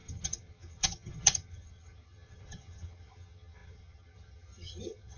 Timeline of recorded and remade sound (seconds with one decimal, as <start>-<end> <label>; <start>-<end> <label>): 0.0-5.2 remade